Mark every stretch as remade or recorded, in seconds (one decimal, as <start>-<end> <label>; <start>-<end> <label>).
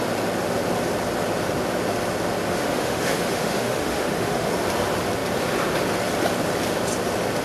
0.0-2.5 recorded; 2.5-4.5 remade; 4.5-7.4 recorded